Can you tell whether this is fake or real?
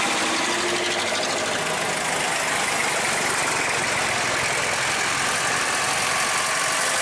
real